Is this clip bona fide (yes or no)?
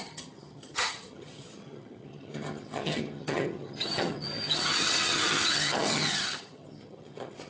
no